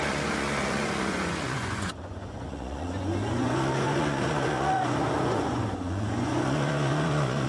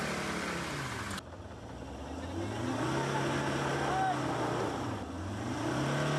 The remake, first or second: first